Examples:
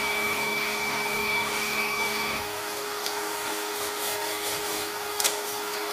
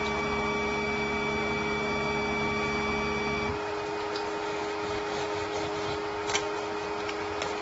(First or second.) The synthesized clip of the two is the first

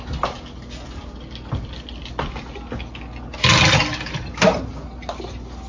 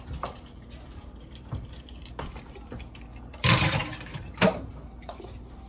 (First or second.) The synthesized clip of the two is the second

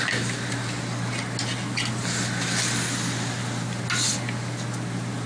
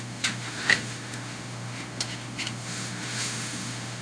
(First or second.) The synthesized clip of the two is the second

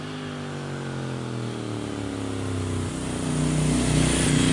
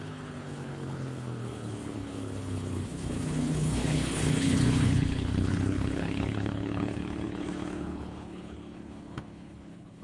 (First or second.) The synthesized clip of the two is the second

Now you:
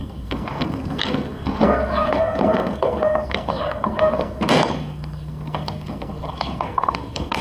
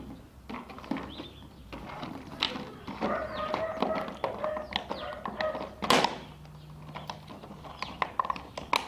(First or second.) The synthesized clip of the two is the first